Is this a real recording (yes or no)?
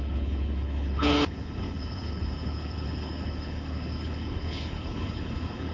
no